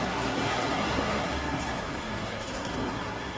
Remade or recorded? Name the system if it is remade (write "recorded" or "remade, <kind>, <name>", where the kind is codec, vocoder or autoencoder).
remade, codec, SNAC